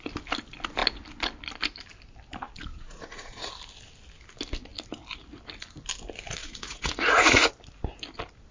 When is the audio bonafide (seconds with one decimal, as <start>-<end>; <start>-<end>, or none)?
0.0-2.7; 3.5-6.4; 7.5-8.5